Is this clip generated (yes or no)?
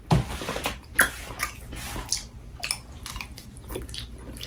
no